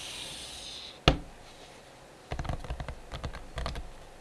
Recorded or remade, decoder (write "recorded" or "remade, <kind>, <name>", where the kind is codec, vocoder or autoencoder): recorded